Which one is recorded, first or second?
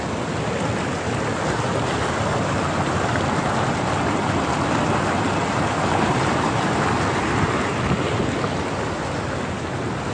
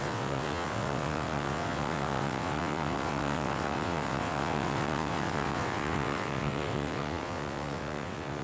first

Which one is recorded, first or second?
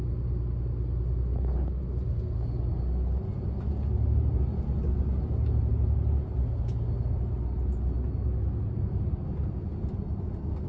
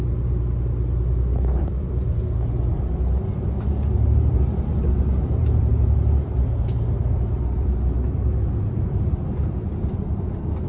first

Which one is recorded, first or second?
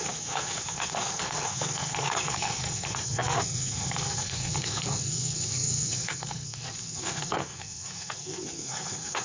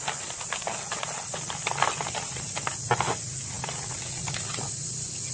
second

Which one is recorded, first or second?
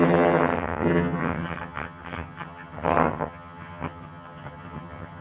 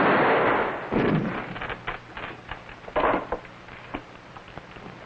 second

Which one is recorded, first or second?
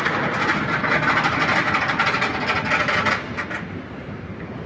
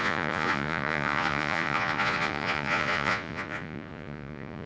first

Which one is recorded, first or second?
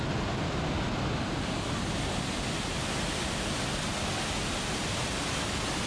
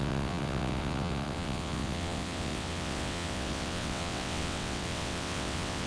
first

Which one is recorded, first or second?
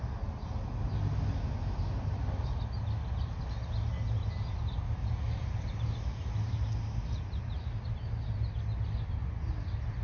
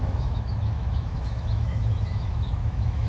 first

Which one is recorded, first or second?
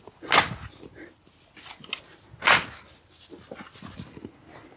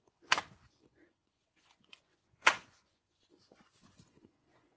first